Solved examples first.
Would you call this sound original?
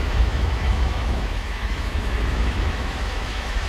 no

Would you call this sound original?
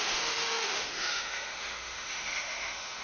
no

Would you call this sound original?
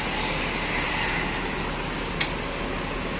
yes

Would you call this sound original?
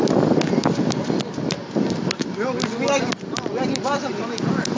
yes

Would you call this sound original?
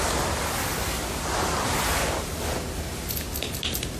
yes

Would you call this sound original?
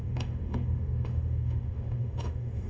no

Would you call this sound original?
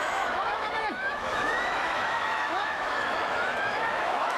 no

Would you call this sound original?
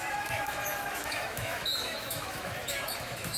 no